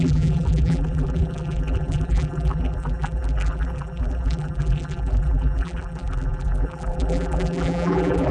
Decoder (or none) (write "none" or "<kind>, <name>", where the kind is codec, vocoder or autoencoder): vocoder, BigVGAN v2